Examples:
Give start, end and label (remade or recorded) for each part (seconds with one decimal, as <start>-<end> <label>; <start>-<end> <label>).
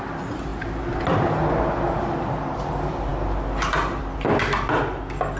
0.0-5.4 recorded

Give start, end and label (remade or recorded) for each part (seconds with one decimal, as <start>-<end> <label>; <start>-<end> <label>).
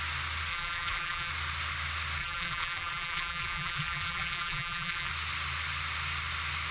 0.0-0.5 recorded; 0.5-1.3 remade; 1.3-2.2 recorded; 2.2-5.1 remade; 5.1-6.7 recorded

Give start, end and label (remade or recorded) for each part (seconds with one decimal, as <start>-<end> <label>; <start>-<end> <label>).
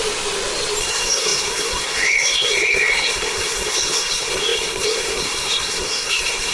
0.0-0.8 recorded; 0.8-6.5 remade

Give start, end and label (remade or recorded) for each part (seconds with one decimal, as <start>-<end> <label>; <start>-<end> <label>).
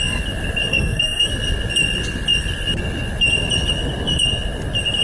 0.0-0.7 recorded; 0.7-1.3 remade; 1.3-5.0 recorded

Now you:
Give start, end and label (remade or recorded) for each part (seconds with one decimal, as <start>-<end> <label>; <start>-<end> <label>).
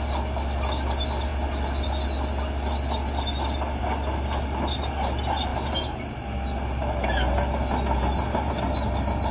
0.0-9.3 recorded